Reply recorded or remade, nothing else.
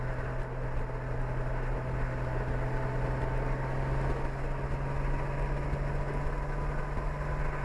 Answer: recorded